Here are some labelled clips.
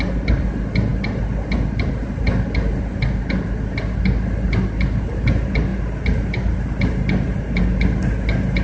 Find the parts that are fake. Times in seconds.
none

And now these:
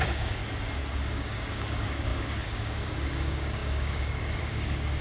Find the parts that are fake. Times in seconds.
0.0-0.4 (codec, DAC); 1.1-5.0

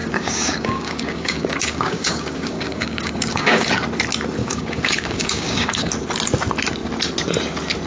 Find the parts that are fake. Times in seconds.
0.0-3.7 (codec, DAC); 4.4-5.9

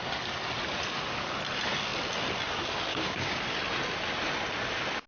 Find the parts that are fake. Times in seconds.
2.9-3.4 (codec, DAC)

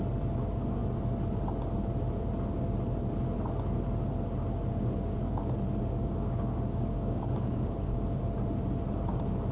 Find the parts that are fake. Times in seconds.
4.7-5.5 (codec, DAC); 6.0-8.2